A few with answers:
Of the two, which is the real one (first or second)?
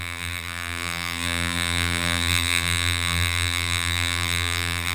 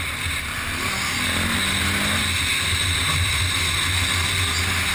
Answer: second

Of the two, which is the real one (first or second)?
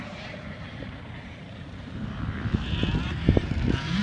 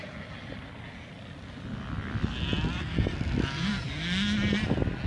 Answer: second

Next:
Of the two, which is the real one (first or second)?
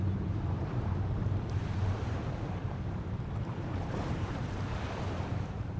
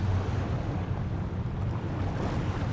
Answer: second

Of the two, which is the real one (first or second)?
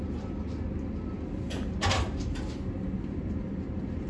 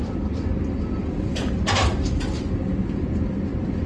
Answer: first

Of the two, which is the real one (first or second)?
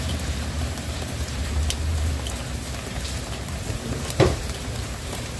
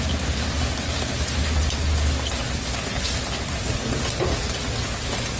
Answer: second